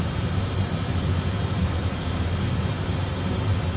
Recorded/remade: recorded